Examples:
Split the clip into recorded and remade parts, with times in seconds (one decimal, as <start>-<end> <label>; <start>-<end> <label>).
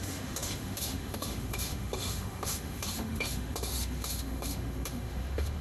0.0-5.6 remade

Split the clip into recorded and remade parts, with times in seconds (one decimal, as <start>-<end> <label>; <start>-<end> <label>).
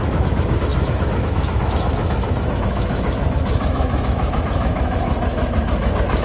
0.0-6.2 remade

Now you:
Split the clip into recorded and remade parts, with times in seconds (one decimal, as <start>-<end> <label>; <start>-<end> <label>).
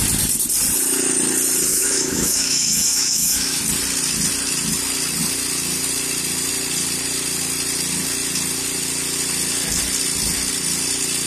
0.0-1.7 recorded; 1.7-3.6 remade; 3.6-11.3 recorded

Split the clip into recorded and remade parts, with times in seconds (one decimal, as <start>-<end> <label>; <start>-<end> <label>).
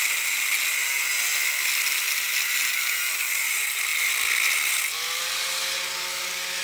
0.0-6.6 recorded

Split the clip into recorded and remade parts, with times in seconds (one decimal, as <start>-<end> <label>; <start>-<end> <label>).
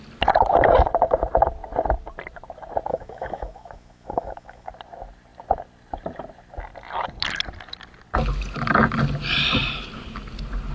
0.0-2.9 recorded; 2.9-4.7 remade; 4.7-10.7 recorded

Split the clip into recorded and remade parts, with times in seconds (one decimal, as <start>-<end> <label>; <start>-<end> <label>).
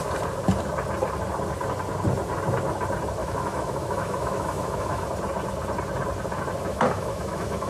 0.0-3.2 recorded; 3.2-5.1 remade; 5.1-6.7 recorded; 6.7-7.7 remade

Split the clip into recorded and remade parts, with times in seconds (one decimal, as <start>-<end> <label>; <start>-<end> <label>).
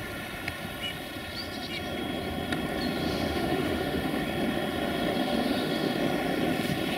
0.0-3.0 recorded; 3.0-4.2 remade; 4.2-5.2 recorded; 5.2-6.0 remade; 6.0-7.0 recorded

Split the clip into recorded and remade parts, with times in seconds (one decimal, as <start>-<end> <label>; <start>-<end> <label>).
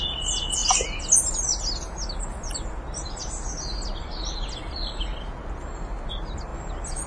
0.0-7.1 recorded